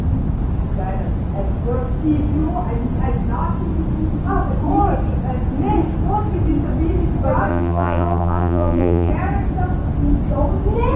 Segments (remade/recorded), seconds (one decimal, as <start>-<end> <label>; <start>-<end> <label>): 0.0-7.5 recorded; 7.5-9.1 remade; 9.1-11.0 recorded